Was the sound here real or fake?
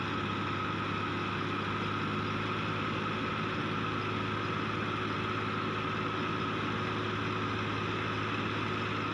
real